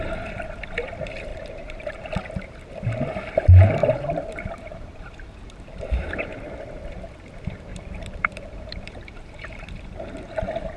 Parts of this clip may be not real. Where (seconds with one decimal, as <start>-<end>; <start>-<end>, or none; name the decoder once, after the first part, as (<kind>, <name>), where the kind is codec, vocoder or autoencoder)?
1.3-2.0 (vocoder, BigVGAN v2); 3.8-7.0; 7.7-10.1